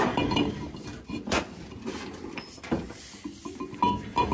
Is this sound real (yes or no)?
yes